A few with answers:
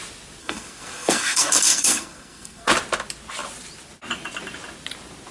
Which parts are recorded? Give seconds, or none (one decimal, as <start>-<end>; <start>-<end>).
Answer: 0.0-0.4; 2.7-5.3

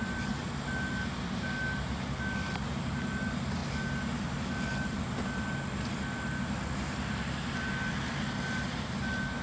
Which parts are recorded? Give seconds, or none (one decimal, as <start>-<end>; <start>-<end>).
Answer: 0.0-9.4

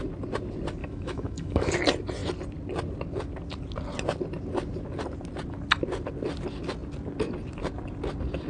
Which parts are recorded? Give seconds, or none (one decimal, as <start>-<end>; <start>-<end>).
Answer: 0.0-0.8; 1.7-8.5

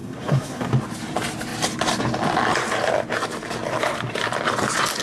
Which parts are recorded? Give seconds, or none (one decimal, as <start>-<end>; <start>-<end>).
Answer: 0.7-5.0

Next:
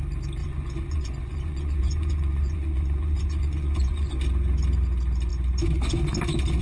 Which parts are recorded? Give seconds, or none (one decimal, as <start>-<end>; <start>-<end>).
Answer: 0.0-0.4; 4.1-6.6